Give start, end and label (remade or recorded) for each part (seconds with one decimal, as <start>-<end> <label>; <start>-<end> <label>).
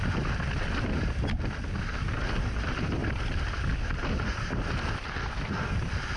0.0-6.2 recorded